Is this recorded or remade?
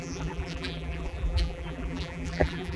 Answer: remade